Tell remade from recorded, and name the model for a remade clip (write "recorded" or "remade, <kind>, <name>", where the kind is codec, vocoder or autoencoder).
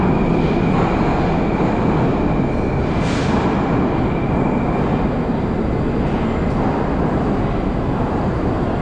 recorded